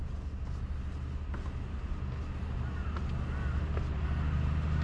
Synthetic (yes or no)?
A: no